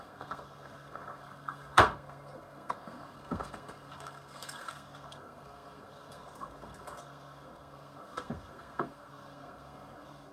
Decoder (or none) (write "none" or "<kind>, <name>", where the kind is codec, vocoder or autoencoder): codec, SNAC